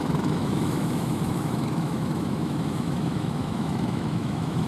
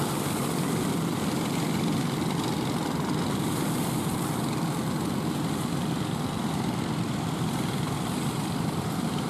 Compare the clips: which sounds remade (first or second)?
first